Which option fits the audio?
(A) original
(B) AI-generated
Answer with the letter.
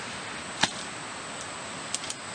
A